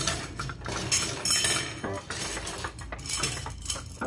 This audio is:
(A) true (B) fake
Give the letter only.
A